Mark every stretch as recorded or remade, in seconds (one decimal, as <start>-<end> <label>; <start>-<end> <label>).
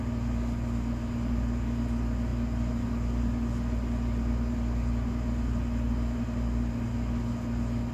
0.0-7.9 recorded